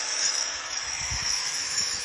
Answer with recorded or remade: remade